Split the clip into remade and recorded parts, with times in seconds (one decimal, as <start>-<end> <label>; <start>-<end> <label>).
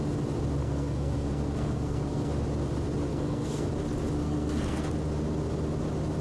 0.0-0.6 recorded; 0.6-2.3 remade; 2.3-3.1 recorded; 3.1-3.7 remade; 3.7-4.2 recorded; 4.2-4.9 remade; 4.9-6.2 recorded